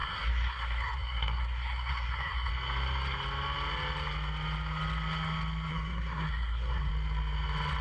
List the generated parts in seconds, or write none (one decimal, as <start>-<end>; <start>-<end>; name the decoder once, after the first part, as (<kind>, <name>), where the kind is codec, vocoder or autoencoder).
0.0-2.5 (codec, SNAC); 5.7-6.9